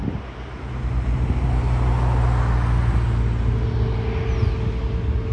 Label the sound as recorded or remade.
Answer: recorded